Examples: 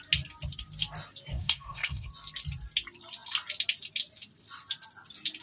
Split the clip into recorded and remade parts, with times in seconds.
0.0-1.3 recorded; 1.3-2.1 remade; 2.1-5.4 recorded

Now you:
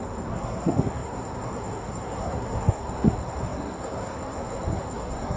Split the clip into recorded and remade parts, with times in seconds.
0.0-5.4 remade

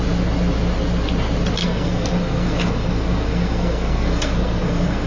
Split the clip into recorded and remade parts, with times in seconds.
0.0-1.6 recorded; 1.6-5.1 remade

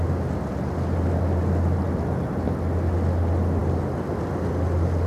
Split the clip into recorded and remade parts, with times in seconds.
0.0-5.1 recorded

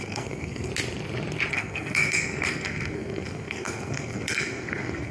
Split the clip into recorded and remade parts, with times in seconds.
0.0-0.7 remade; 0.7-1.5 recorded; 1.5-5.1 remade

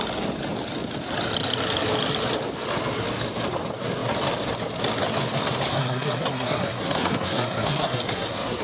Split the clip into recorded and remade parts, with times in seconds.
0.0-5.7 recorded; 5.7-8.6 remade